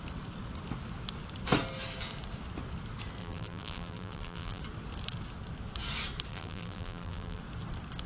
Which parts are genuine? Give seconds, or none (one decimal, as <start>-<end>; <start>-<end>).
0.0-3.2; 4.6-6.3; 7.4-8.1